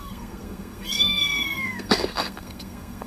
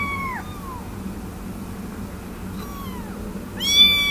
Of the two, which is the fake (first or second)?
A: first